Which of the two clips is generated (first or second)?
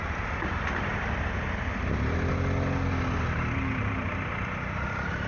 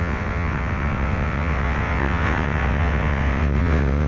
second